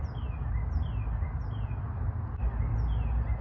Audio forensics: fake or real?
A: real